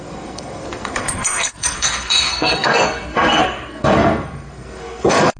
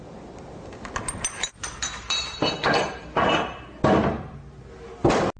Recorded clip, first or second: second